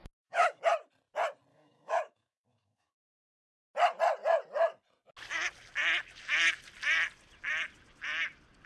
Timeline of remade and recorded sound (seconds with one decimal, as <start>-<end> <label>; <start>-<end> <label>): 0.0-0.6 remade; 0.6-1.5 recorded; 1.5-3.4 remade; 3.4-8.7 recorded